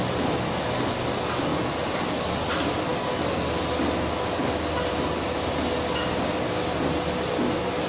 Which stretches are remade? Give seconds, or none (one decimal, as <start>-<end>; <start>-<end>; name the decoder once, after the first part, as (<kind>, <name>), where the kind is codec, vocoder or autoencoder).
none